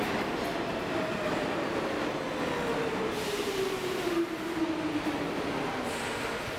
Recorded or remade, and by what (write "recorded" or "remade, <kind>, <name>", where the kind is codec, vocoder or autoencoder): recorded